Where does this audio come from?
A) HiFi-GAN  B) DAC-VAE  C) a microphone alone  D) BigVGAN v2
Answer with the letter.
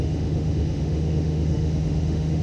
B